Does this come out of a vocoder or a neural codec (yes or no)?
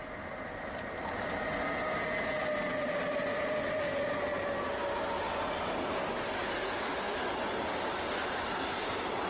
no